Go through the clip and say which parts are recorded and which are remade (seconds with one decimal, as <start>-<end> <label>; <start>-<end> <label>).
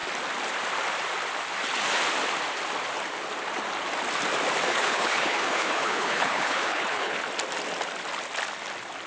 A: 0.0-4.7 recorded; 4.7-7.2 remade; 7.2-9.1 recorded